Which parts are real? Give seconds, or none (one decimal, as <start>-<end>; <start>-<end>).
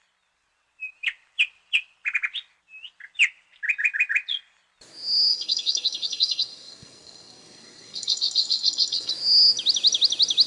0.0-5.3; 9.1-10.5